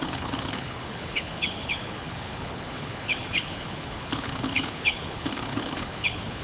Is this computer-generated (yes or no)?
yes